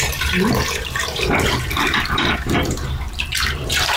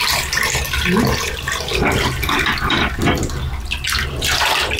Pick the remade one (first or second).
first